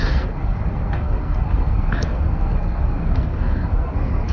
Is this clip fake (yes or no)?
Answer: yes